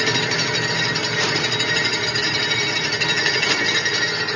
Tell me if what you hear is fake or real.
real